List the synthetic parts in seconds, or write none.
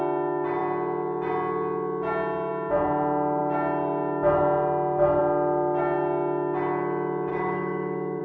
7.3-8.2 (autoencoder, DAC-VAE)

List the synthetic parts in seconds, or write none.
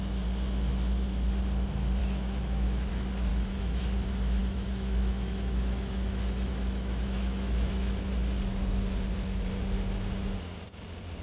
2.0-2.9 (autoencoder, DAC-VAE); 3.3-3.8; 4.4-8.1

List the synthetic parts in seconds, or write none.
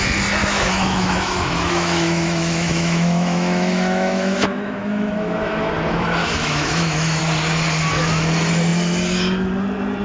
0.4-5.7 (autoencoder, DAC-VAE); 6.2-7.2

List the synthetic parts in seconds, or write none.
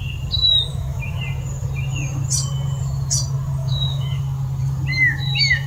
0.7-1.2 (autoencoder, DAC-VAE); 3.6-4.2; 4.9-5.7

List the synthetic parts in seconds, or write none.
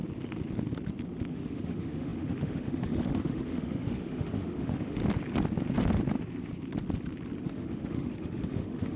1.3-5.0 (autoencoder, DAC-VAE); 7.4-9.0